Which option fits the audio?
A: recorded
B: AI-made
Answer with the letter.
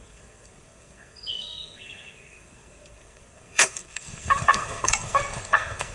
B